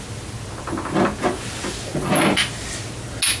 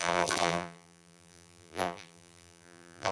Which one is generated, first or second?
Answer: second